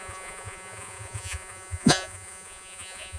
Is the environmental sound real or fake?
fake